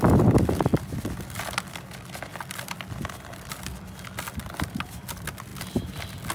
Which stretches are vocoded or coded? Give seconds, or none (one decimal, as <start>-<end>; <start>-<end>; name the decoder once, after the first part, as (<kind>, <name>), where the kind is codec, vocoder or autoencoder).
none